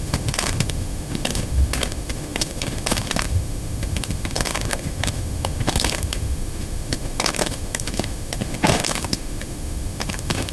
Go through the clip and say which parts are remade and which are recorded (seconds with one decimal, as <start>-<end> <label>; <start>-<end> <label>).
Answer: 0.0-10.5 remade